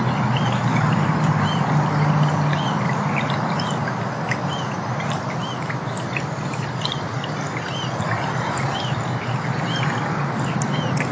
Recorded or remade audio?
recorded